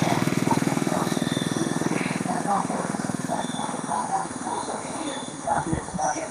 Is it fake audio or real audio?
fake